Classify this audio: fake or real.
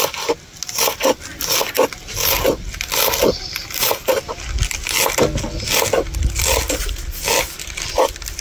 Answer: real